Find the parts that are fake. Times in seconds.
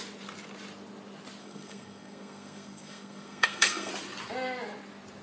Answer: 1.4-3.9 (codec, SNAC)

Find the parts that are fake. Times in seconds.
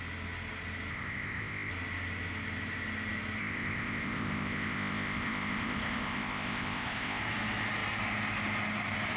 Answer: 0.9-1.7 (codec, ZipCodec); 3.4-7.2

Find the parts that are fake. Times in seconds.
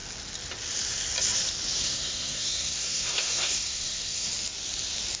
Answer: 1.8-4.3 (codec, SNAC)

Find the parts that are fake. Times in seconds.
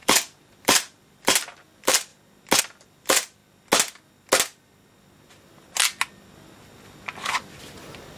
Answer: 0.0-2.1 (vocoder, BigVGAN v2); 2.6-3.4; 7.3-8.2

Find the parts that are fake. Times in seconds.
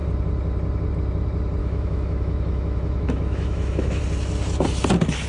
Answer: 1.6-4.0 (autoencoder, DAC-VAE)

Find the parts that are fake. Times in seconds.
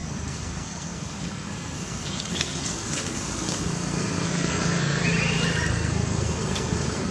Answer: 0.0-5.0 (codec, SNAC); 5.7-7.1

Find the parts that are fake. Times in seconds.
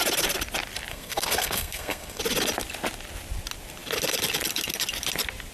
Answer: 0.9-2.2 (codec, SNAC)